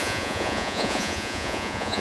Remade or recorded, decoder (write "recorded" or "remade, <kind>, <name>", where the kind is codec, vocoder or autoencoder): remade, vocoder, Vocos